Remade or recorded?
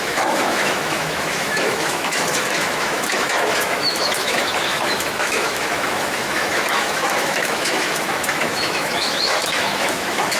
remade